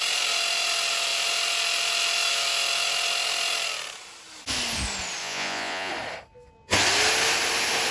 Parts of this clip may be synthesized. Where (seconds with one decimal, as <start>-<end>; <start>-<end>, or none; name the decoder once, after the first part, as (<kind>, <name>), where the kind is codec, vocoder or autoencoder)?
5.2-5.9 (vocoder, Vocos)